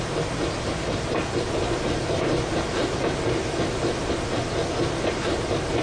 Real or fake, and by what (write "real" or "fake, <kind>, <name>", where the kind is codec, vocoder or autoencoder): real